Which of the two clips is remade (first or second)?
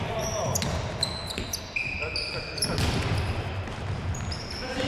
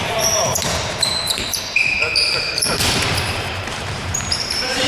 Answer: second